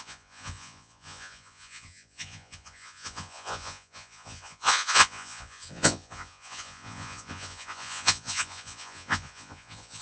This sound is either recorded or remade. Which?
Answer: remade